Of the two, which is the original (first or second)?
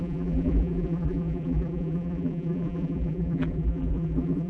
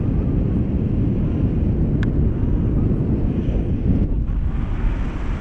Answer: second